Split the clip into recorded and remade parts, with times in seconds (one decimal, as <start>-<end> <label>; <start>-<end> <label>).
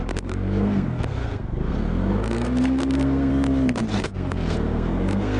0.0-3.3 remade; 3.3-3.9 recorded; 3.9-5.4 remade